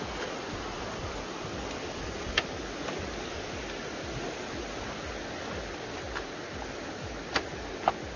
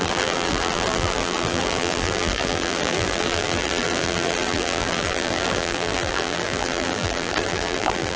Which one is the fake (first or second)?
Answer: second